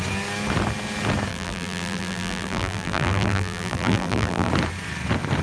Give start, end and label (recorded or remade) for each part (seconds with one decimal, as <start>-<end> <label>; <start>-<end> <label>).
0.0-1.3 recorded; 1.3-4.5 remade; 4.5-5.4 recorded